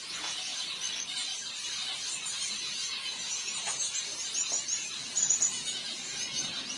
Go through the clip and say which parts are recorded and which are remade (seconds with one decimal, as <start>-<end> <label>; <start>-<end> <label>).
0.0-0.5 remade; 0.5-2.6 recorded; 2.6-4.1 remade; 4.1-5.4 recorded; 5.4-6.8 remade